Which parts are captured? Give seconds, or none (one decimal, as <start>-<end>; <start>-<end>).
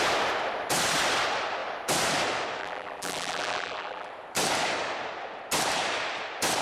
0.0-2.6; 4.1-6.6